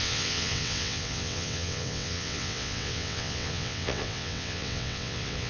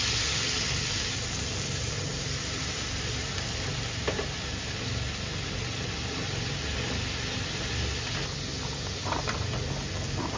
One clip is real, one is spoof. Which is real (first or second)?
second